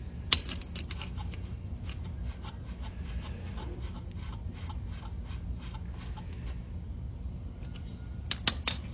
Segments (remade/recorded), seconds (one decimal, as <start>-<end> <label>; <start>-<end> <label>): 0.0-8.9 recorded